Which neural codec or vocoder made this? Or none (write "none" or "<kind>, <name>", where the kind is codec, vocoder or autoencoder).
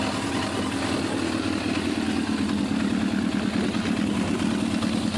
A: none